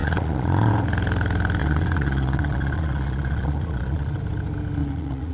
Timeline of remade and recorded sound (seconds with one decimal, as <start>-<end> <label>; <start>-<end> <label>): 0.0-0.7 remade; 0.7-1.6 recorded; 1.6-4.2 remade; 4.2-4.8 recorded; 4.8-5.3 remade